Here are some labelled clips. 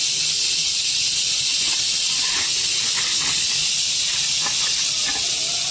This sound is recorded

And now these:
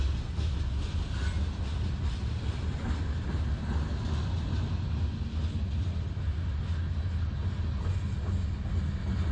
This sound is recorded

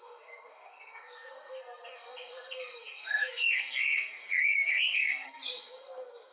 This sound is remade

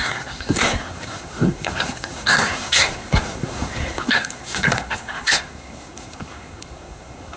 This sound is remade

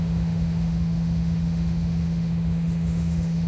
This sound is remade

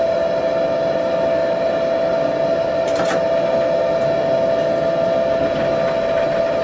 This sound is recorded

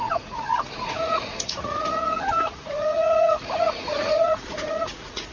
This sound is remade